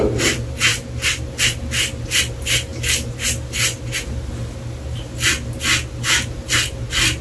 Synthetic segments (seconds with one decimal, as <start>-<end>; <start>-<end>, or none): none